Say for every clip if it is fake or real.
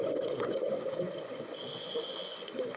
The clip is fake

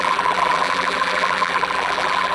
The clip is fake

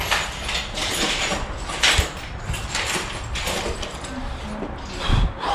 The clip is real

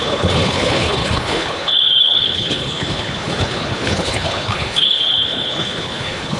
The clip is fake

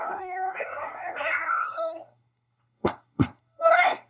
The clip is fake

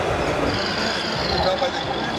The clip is real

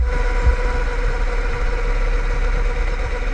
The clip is real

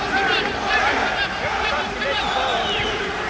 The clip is real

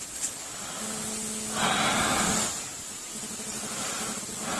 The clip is real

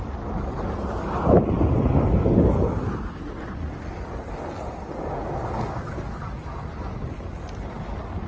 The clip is real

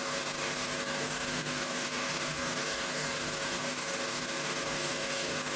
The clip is fake